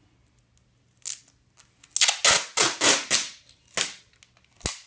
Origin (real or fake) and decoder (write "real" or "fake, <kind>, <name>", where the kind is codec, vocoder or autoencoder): real